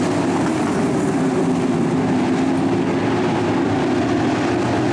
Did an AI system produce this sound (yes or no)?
no